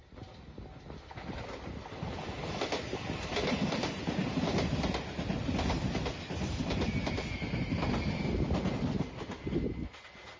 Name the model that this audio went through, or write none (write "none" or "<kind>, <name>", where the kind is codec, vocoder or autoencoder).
none